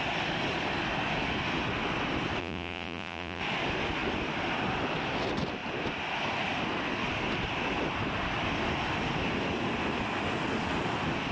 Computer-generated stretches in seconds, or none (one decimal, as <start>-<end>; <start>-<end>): 2.4-3.4